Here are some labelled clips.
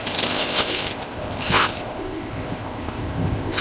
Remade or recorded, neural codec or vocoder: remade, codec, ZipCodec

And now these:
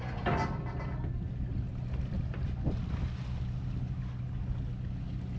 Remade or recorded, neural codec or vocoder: recorded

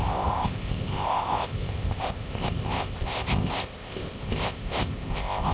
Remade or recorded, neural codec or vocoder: remade, codec, ZipCodec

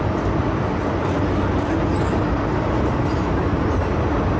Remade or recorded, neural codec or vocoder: recorded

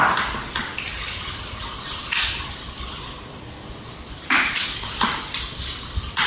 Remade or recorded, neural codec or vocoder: recorded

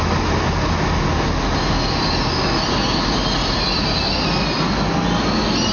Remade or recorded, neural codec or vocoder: recorded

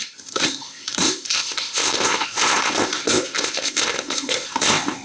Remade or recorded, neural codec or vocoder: remade, codec, ZipCodec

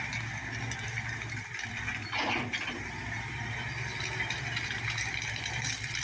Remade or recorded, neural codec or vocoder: recorded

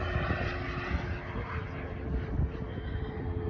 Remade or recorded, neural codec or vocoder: recorded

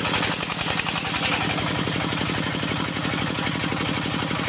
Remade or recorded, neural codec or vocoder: recorded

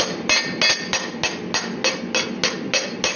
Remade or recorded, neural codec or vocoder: recorded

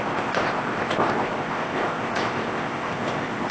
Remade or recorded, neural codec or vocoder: remade, codec, ZipCodec